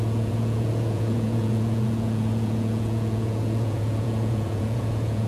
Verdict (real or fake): fake